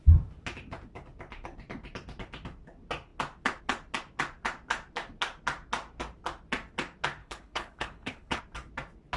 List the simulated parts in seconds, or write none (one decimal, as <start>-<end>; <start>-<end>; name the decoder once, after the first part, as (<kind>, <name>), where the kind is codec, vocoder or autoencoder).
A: 7.2-8.4 (codec, HILCodec)